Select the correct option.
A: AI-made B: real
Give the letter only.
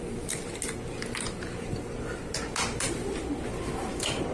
B